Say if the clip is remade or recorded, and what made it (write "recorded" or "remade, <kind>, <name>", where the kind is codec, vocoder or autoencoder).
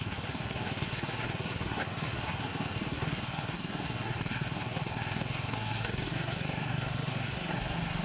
remade, codec, SNAC